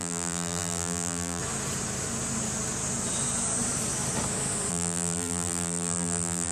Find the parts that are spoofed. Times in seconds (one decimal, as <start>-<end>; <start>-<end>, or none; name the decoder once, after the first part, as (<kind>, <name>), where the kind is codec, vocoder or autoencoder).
0.0-1.4 (vocoder, BigVGAN v2); 4.7-6.5